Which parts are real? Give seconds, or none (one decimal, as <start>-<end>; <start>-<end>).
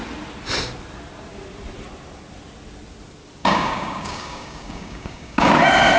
0.0-3.4; 5.5-6.0